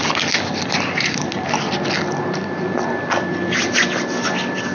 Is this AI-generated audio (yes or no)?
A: no